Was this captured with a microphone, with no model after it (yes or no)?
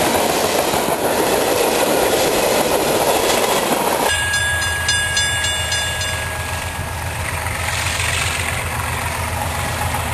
no